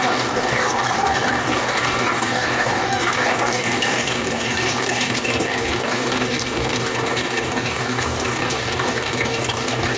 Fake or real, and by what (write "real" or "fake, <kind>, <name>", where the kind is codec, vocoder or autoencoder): fake, codec, DAC